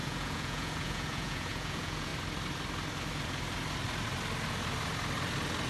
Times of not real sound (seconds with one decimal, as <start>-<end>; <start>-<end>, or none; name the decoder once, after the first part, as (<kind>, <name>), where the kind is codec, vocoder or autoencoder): 0.0-2.1 (vocoder, Vocos)